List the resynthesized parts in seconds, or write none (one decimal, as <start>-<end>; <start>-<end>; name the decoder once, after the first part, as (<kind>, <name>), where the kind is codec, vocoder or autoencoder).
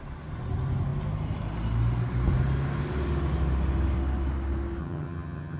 4.8-5.6 (vocoder, HiFi-GAN)